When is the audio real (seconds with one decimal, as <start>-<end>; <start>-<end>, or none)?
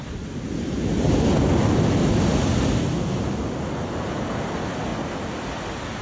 0.0-6.0